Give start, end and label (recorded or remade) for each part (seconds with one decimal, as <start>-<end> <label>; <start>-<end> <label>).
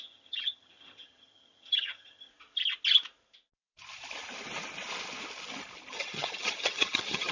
0.0-2.3 remade; 2.3-5.9 recorded; 5.9-7.3 remade